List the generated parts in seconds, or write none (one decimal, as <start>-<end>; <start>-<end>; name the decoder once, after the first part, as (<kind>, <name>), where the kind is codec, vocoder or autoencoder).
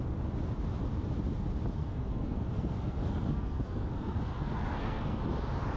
1.8-5.2 (codec, SNAC)